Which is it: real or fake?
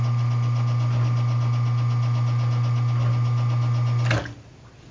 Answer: real